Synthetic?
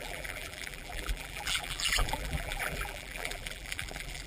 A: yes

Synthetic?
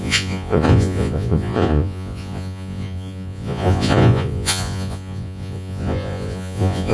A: yes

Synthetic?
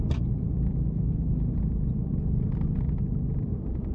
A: no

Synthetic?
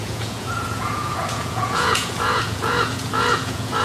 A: yes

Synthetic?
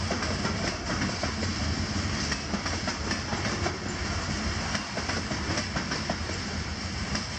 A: no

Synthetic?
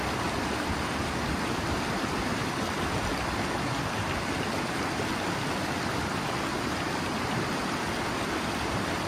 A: no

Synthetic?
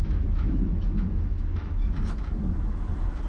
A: yes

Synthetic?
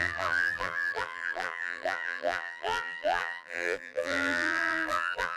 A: yes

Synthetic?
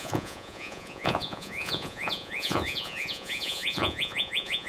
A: yes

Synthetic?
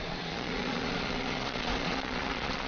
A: yes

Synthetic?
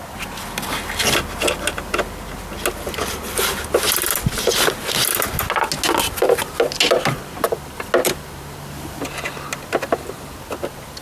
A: no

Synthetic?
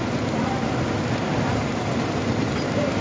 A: no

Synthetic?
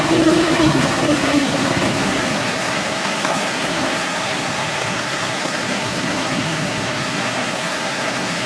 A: yes